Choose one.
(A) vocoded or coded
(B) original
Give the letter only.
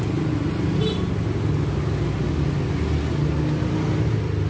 B